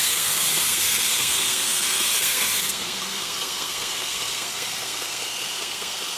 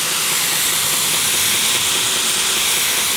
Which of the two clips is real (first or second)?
second